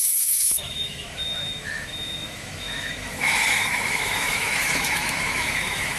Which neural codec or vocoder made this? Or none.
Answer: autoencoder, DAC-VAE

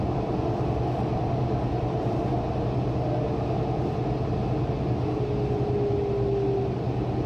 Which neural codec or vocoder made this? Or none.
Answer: none